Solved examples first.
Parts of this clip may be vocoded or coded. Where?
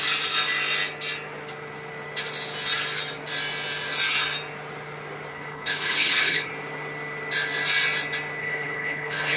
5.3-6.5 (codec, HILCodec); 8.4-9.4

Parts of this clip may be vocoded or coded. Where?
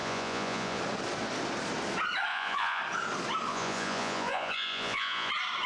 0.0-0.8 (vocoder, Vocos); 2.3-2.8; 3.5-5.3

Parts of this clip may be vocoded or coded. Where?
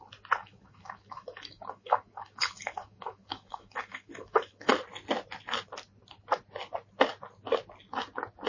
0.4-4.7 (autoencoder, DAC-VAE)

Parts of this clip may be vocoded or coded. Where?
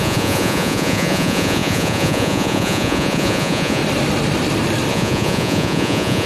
0.0-3.8 (vocoder, Vocos); 4.9-6.3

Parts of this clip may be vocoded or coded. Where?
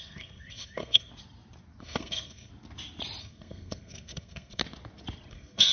0.0-1.1 (codec, SNAC); 1.8-2.5; 3.2-4.6; 5.3-5.7